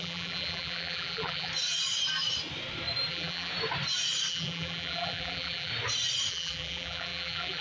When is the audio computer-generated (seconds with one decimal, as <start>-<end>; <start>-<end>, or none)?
0.0-1.5; 3.1-3.5; 4.3-5.7; 6.3-7.6